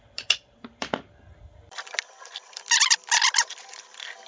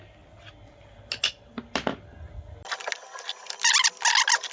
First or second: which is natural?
second